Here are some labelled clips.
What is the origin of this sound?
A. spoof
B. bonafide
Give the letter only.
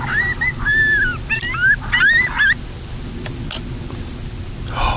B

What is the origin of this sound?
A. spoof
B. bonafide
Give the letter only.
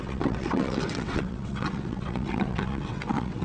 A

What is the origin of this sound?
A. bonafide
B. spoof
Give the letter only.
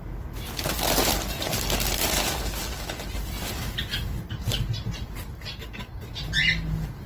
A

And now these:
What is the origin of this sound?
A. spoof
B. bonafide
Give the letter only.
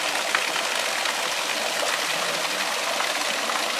B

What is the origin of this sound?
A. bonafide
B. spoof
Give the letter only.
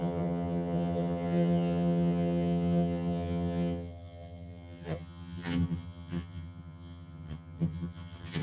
B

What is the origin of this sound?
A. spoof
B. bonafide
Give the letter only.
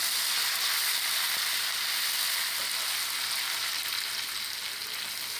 B